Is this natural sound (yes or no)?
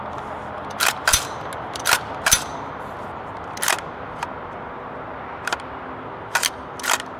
yes